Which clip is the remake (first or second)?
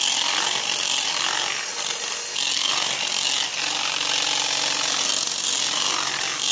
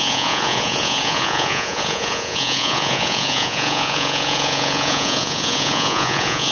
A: second